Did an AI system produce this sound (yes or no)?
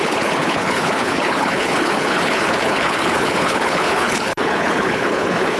yes